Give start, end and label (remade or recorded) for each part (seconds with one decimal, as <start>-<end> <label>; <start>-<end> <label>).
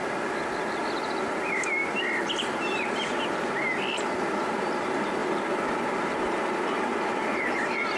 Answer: 0.0-8.0 recorded